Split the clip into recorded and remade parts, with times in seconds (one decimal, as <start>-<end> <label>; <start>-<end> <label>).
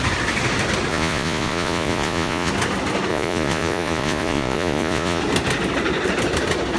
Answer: 0.0-0.9 recorded; 0.9-2.5 remade; 2.5-3.1 recorded; 3.1-5.2 remade; 5.2-6.8 recorded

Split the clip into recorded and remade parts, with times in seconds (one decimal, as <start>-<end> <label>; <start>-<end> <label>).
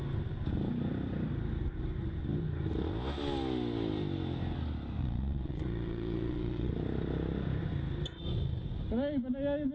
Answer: 0.0-5.0 recorded; 5.0-6.7 remade; 6.7-9.7 recorded